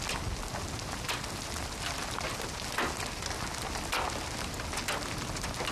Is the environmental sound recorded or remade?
recorded